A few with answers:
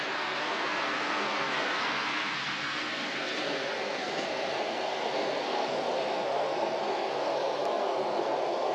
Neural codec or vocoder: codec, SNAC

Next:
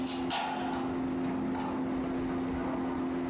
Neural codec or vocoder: none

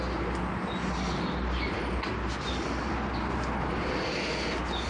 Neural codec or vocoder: none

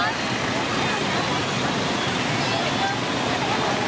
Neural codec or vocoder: none